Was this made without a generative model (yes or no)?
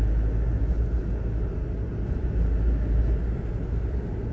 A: yes